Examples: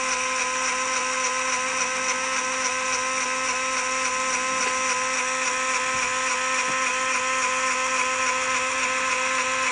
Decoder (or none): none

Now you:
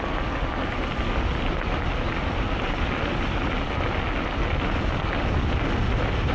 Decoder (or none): none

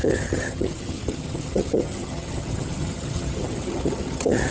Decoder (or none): vocoder, HiFi-GAN